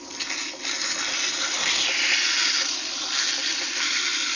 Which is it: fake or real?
real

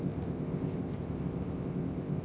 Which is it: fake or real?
fake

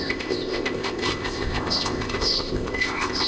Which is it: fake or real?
fake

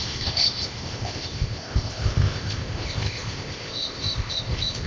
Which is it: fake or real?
fake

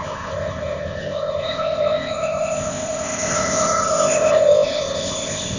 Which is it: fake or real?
fake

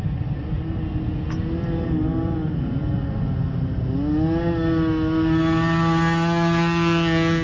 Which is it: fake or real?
real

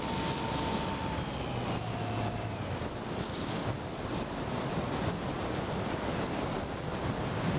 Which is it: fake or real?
real